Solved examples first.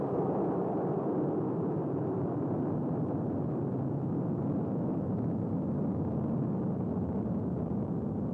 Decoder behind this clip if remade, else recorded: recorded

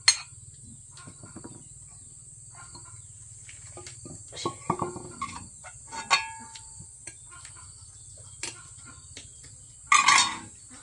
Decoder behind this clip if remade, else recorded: recorded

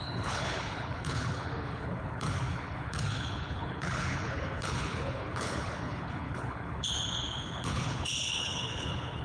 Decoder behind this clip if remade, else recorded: remade, codec, HILCodec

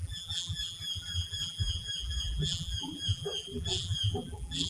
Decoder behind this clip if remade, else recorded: remade, vocoder, BigVGAN v2